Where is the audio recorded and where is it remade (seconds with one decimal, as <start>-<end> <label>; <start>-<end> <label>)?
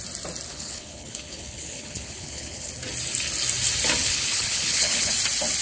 0.0-0.5 recorded; 0.5-2.7 remade; 2.7-4.0 recorded; 4.0-5.1 remade; 5.1-5.6 recorded